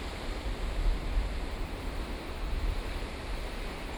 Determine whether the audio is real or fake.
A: fake